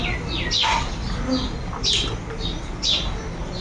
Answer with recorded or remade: recorded